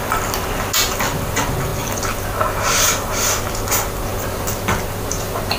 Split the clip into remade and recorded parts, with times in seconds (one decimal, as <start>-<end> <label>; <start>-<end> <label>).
0.0-5.6 recorded